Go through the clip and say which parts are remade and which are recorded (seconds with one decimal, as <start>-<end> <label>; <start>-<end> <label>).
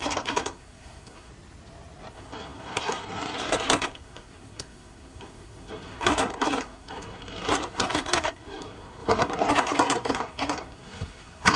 0.0-1.3 remade; 1.3-2.1 recorded; 2.1-11.6 remade